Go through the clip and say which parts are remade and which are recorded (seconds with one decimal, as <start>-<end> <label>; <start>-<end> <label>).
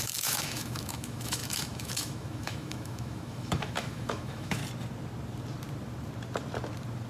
0.0-4.6 remade; 4.6-7.1 recorded